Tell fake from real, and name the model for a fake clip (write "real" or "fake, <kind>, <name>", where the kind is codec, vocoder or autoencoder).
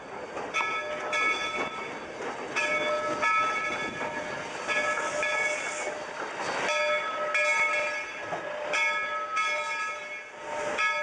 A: real